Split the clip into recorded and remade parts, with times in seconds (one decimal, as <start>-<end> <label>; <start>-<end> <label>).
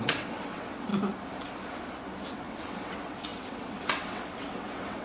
0.0-0.9 remade; 0.9-2.3 recorded; 2.3-5.0 remade